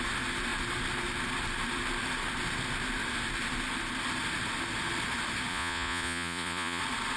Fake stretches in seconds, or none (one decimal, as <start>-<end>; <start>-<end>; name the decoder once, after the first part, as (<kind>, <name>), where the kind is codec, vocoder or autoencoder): 5.5-6.8 (vocoder, Vocos)

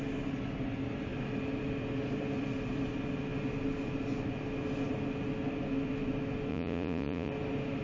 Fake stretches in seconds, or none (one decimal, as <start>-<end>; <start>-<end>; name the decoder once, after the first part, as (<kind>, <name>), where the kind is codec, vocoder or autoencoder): 6.5-7.3 (vocoder, Vocos)

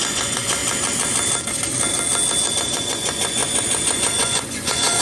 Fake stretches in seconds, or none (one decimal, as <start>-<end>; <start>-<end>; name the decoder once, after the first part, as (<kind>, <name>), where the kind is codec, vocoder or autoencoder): 0.0-0.6 (vocoder, Vocos); 2.5-5.0

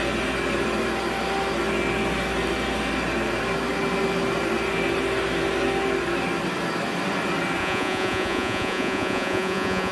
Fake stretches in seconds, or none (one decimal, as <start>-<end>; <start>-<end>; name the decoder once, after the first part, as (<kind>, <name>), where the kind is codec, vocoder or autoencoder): 7.6-9.9 (vocoder, Vocos)

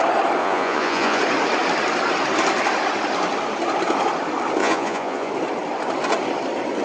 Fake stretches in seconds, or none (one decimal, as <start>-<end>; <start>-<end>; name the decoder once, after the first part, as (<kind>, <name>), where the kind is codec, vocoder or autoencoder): 0.4-1.2 (vocoder, Vocos); 4.6-5.3